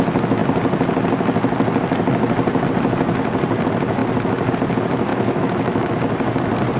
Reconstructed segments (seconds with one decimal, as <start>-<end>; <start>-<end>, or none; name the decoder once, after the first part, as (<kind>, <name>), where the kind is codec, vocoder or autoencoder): 5.1-5.9 (autoencoder, DAC-VAE)